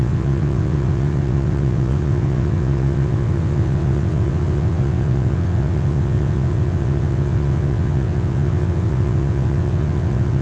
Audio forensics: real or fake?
fake